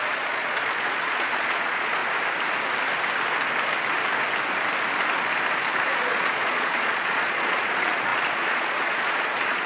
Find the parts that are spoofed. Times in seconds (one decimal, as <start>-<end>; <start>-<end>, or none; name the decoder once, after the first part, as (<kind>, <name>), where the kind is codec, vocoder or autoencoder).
0.0-2.0 (vocoder, Vocos); 5.7-9.7